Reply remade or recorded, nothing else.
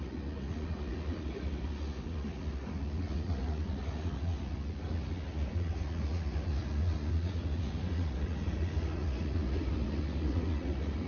remade